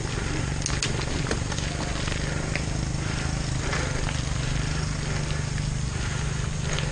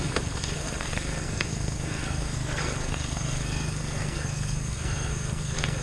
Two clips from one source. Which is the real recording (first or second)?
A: first